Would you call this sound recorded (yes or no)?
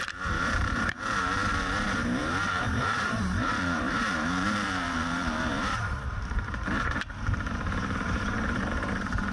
no